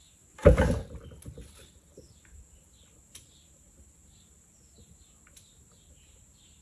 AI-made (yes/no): no